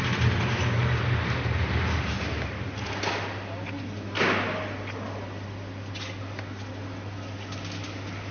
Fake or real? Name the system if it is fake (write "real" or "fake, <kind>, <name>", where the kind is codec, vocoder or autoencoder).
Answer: real